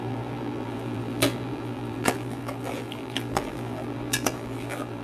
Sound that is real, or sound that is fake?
fake